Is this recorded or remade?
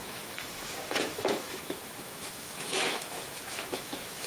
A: remade